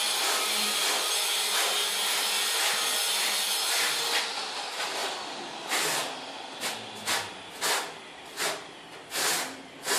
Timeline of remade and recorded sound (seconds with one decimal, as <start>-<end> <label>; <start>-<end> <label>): 0.0-10.0 recorded